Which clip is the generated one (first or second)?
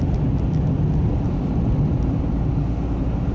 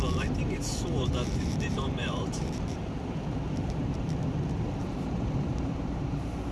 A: second